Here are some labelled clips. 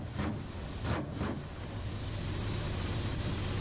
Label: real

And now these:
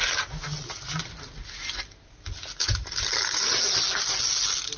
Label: real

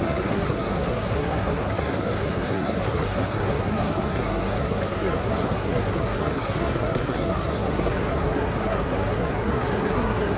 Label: fake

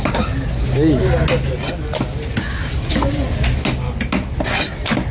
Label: real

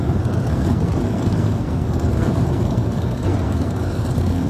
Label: fake